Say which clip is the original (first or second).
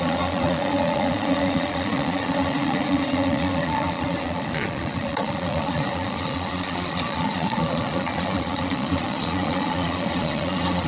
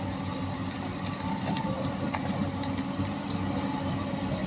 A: second